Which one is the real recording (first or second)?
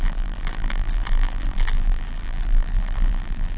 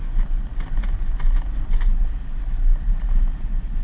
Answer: second